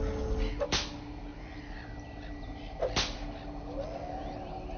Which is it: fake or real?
real